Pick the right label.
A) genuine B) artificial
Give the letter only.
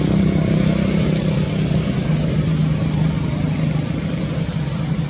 A